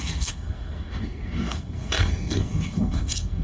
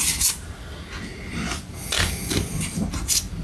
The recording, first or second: second